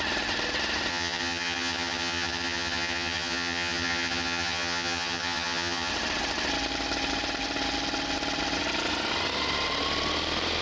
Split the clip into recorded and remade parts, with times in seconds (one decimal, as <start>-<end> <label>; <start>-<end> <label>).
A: 0.0-0.9 recorded; 0.9-5.9 remade; 5.9-10.6 recorded